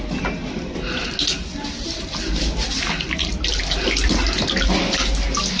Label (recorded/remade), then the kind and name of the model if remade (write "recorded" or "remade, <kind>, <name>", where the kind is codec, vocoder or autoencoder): recorded